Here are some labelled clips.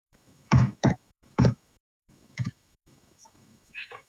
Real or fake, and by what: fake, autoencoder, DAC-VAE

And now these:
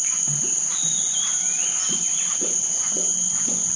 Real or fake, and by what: real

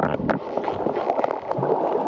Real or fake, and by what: real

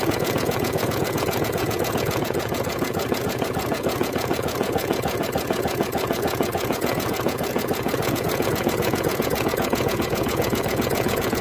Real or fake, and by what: fake, vocoder, Vocos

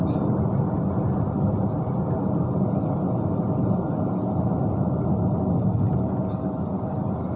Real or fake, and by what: real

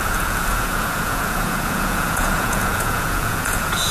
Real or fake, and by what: fake, vocoder, Vocos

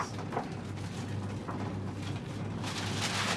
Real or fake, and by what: real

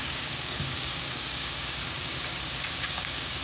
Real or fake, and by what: fake, codec, DAC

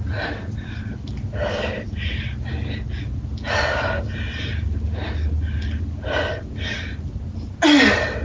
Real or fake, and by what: real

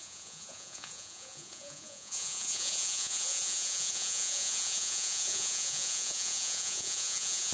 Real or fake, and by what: fake, vocoder, Vocos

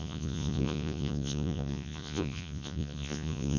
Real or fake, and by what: fake, vocoder, Vocos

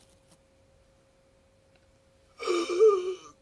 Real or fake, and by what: real